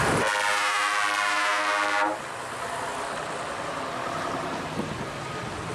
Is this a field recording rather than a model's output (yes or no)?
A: yes